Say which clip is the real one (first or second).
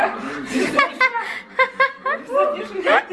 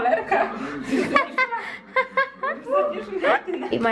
first